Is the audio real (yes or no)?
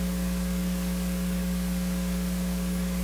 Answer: no